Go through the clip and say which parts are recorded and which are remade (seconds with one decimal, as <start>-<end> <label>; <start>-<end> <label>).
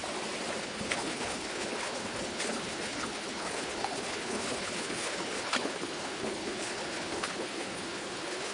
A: 0.0-0.6 recorded; 0.6-8.5 remade